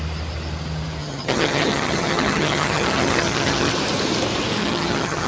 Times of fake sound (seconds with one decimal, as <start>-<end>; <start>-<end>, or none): 1.0-3.7; 4.6-5.3